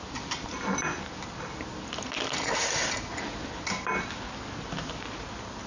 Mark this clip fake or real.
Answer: real